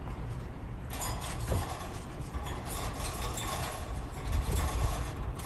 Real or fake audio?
fake